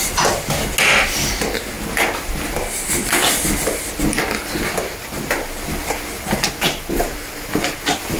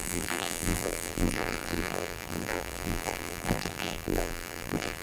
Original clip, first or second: first